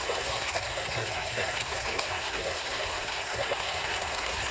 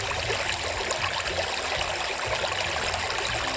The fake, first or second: first